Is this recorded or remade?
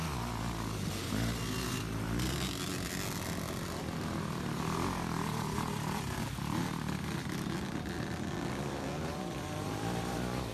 recorded